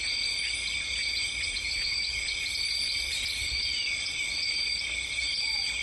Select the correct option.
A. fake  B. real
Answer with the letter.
B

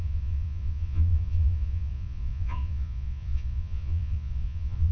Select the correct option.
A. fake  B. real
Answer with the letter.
A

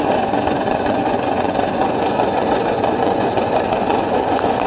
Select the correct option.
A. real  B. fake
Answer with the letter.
B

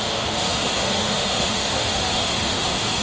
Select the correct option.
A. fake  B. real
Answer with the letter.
A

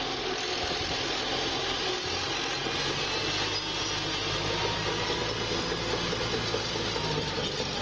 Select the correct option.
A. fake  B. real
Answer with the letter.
B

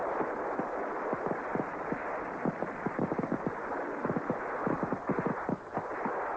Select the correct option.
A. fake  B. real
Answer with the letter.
B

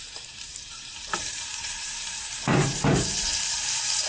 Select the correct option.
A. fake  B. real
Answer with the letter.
A